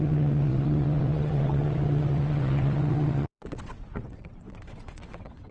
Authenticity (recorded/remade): remade